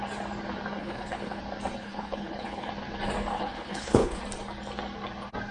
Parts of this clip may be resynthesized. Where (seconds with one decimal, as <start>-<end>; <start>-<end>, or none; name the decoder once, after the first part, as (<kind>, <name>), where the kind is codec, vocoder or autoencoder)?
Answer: 0.8-1.4 (codec, HILCodec); 1.8-2.7; 3.3-4.2